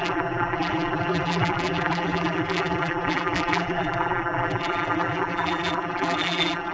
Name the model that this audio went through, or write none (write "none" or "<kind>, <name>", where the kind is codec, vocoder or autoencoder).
vocoder, BigVGAN v2